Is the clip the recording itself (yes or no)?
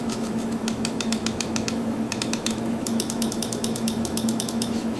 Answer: no